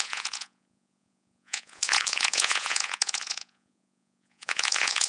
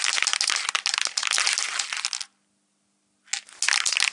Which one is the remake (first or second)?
first